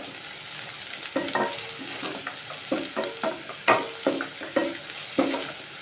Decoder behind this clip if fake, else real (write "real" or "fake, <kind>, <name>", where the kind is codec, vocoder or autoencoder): real